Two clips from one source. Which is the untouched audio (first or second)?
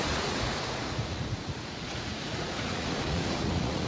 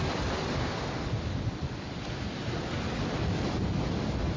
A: second